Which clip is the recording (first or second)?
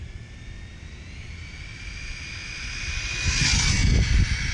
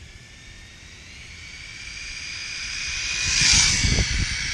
first